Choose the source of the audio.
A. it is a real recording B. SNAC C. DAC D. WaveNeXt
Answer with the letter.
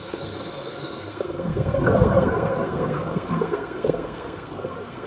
B